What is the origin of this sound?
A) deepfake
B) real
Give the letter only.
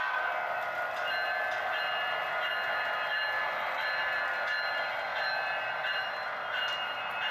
B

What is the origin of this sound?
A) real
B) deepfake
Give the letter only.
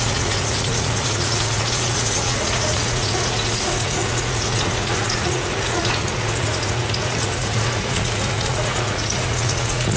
B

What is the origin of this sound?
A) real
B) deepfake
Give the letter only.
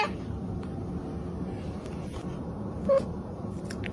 B